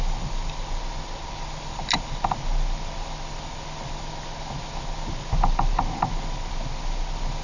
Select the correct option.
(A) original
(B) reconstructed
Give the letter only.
A